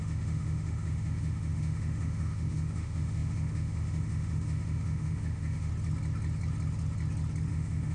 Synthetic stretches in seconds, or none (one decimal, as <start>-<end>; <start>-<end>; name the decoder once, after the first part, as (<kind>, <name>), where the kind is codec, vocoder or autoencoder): 0.0-5.7 (autoencoder, DAC-VAE); 7.5-7.9